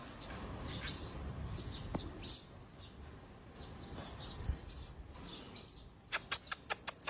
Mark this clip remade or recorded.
recorded